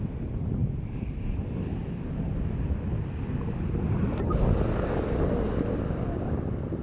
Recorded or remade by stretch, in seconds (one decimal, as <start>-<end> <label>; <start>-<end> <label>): 0.0-6.8 recorded

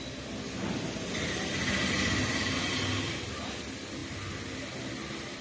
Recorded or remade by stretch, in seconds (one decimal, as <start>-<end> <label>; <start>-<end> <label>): 0.0-5.4 recorded

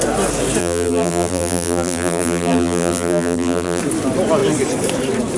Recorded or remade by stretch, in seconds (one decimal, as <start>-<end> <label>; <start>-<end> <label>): 0.0-0.6 recorded; 0.6-3.8 remade; 3.8-5.4 recorded

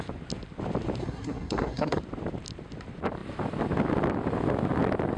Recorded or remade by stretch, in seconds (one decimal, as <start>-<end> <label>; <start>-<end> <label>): 0.0-1.0 recorded; 1.0-2.0 remade; 2.0-5.2 recorded

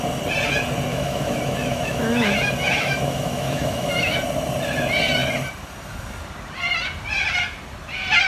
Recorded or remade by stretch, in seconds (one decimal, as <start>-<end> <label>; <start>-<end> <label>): 0.0-0.9 recorded; 0.9-4.2 remade; 4.2-8.3 recorded

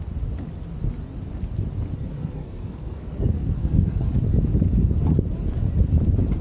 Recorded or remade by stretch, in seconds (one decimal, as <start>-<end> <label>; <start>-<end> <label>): 0.0-2.1 recorded; 2.1-4.1 remade; 4.1-6.4 recorded

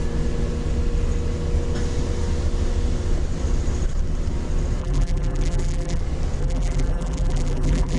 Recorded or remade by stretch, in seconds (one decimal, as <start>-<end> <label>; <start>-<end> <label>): 0.0-4.8 recorded; 4.8-6.0 remade; 6.0-6.4 recorded; 6.4-8.0 remade

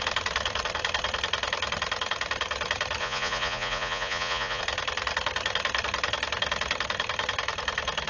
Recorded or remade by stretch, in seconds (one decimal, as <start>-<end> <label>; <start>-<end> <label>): 0.0-3.0 recorded; 3.0-4.6 remade; 4.6-8.1 recorded